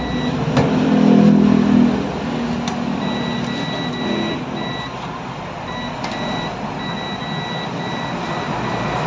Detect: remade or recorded recorded